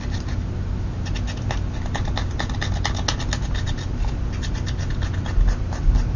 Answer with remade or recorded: recorded